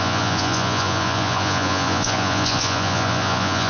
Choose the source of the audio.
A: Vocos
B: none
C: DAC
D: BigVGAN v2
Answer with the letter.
A